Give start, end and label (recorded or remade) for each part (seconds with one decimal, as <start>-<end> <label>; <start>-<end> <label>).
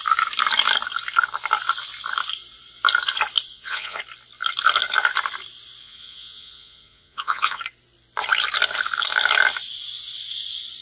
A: 0.0-3.5 recorded; 3.5-4.0 remade; 4.0-5.8 recorded; 5.8-7.6 remade; 7.6-10.8 recorded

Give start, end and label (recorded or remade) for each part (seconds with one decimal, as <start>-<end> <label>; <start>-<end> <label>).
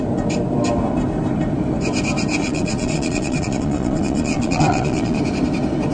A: 0.0-2.4 recorded; 2.4-5.2 remade; 5.2-5.9 recorded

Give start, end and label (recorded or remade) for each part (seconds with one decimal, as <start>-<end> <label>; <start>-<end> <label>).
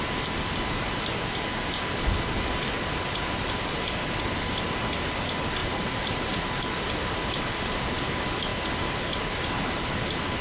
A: 0.0-5.6 recorded; 5.6-6.5 remade; 6.5-10.4 recorded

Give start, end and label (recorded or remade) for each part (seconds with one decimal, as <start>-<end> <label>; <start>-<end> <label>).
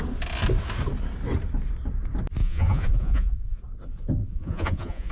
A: 0.0-2.4 recorded; 2.4-3.6 remade; 3.6-4.2 recorded; 4.2-5.1 remade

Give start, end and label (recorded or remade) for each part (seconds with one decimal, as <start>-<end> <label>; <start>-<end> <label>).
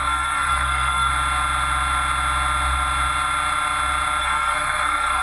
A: 0.0-1.1 remade; 1.1-4.2 recorded; 4.2-5.2 remade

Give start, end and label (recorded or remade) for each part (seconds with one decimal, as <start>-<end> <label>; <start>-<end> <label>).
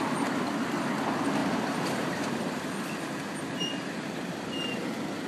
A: 0.0-1.4 recorded; 1.4-2.5 remade; 2.5-5.3 recorded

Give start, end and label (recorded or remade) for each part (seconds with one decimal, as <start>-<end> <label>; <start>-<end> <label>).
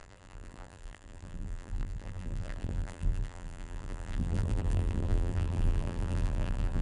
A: 0.0-6.8 remade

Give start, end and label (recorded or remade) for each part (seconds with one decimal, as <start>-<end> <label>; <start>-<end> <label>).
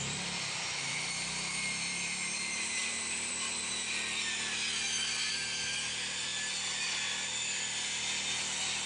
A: 0.0-6.3 remade; 6.3-6.8 recorded; 6.8-8.9 remade